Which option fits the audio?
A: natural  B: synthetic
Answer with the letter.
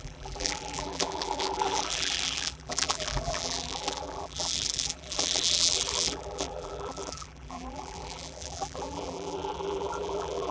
B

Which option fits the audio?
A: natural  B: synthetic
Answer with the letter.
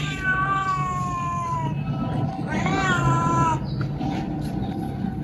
A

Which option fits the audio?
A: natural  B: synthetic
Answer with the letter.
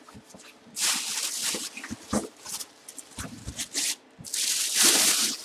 B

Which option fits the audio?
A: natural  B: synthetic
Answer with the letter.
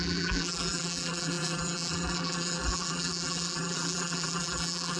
B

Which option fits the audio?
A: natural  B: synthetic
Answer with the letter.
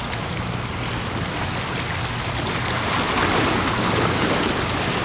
A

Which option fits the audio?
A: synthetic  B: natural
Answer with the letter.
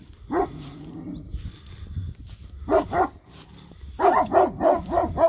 A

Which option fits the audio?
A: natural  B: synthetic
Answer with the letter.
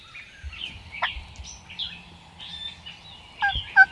A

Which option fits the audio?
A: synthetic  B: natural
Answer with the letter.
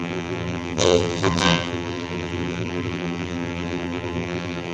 A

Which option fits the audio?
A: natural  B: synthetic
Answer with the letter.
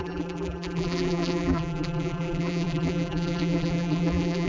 B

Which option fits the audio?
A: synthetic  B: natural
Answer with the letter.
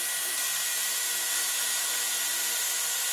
A